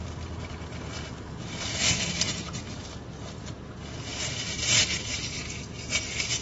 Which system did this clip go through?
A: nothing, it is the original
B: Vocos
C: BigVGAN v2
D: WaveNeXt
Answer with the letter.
A